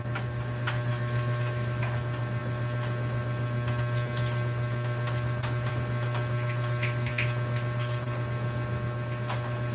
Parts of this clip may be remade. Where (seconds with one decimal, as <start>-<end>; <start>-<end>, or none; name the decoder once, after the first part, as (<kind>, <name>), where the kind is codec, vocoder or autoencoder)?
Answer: 0.9-1.8 (autoencoder, DAC-VAE)